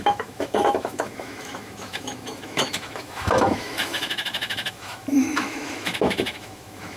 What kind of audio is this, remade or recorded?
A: remade